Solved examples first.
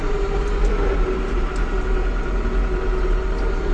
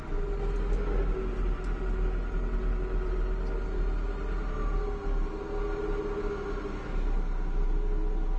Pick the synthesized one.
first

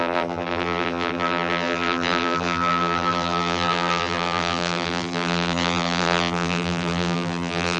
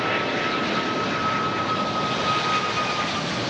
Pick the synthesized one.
first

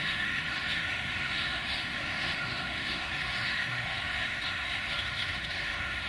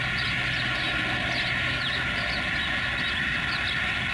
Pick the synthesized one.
first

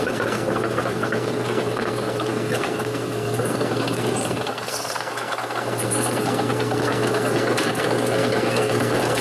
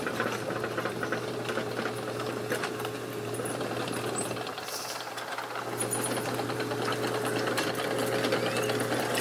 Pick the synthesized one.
first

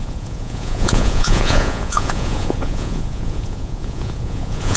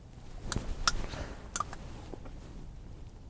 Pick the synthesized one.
first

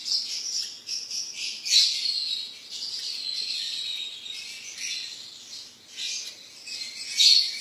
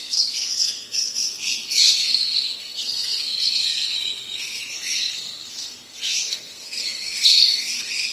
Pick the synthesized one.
second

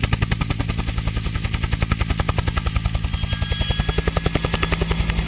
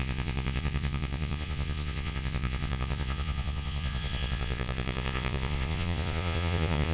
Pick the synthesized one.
second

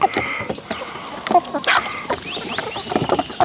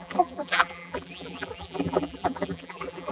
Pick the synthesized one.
second